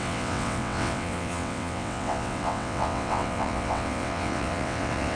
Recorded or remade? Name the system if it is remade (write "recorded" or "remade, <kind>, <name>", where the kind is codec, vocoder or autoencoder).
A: remade, vocoder, WaveNeXt